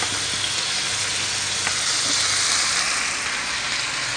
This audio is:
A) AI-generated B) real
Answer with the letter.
B